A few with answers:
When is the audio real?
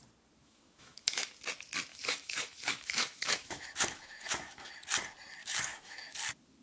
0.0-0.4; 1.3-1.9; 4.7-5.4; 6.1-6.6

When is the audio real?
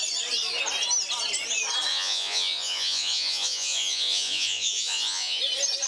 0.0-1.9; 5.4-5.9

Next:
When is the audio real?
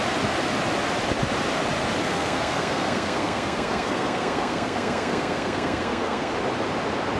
0.0-2.0; 6.3-7.2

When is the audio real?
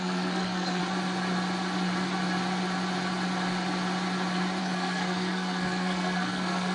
0.8-4.6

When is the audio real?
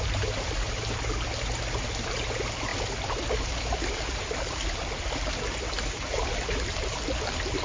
0.0-7.6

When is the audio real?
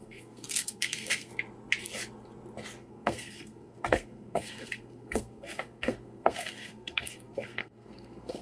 1.3-2.8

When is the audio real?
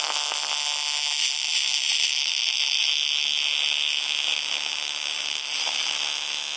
0.0-1.2; 2.9-4.3; 5.9-6.6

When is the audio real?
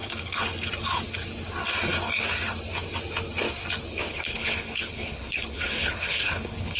0.0-4.1